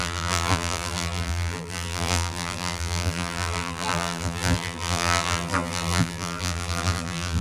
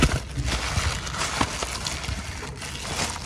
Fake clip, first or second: first